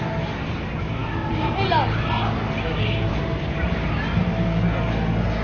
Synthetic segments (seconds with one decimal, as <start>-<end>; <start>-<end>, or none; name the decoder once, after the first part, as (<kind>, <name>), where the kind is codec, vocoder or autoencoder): none